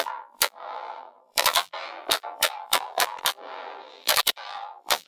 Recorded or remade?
remade